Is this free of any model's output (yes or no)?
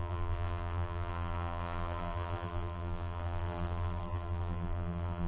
no